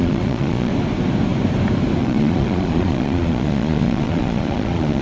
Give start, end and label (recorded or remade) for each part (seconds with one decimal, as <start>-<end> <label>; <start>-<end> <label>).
0.0-0.7 remade; 0.7-2.0 recorded; 2.0-5.0 remade